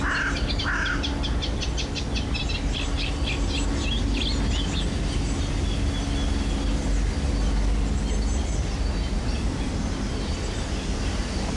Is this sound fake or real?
real